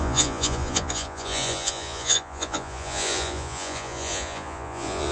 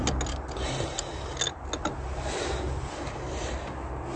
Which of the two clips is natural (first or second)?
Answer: second